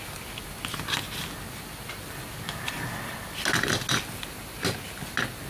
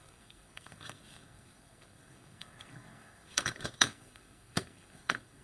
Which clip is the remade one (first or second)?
second